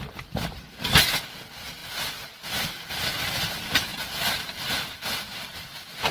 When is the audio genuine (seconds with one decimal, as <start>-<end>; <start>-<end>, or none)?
0.0-6.1